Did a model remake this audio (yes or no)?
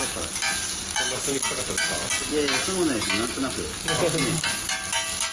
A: no